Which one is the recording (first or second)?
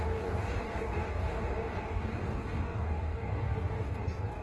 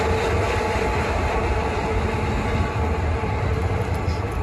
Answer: second